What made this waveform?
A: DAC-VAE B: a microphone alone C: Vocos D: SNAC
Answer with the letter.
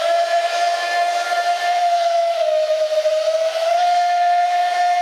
A